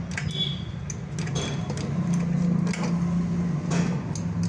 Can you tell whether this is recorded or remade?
recorded